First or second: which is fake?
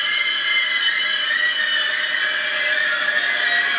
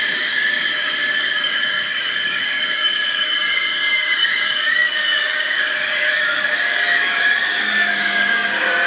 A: second